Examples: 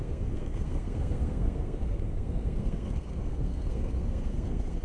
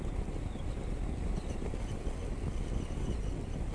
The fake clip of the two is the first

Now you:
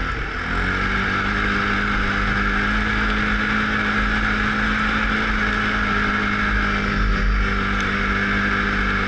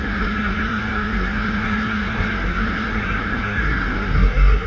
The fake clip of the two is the second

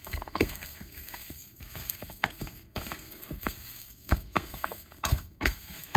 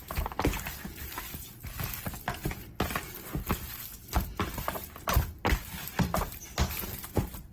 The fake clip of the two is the first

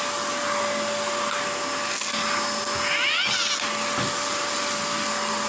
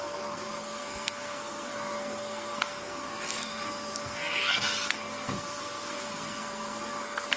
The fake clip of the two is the second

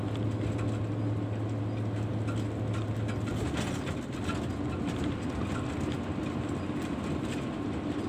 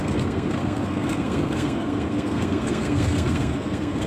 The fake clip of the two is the second